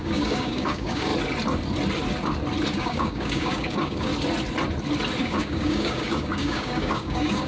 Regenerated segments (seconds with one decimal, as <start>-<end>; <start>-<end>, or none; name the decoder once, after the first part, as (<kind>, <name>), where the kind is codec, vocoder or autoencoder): 0.0-1.1 (codec, DAC); 2.7-4.1; 5.2-7.5